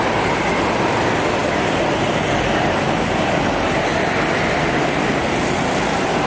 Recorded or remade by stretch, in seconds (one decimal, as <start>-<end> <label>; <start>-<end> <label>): 0.0-6.3 recorded